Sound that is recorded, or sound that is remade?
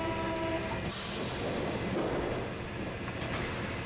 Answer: recorded